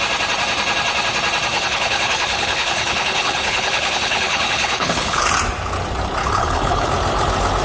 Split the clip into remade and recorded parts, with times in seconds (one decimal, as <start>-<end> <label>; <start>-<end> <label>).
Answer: 0.0-1.5 recorded; 1.5-5.3 remade; 5.3-6.2 recorded; 6.2-6.9 remade; 6.9-7.6 recorded